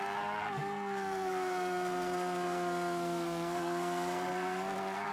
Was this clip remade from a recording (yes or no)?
yes